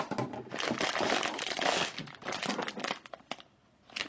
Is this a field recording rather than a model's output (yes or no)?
yes